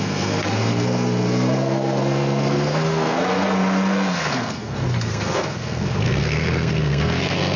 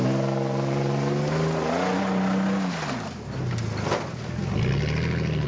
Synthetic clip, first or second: first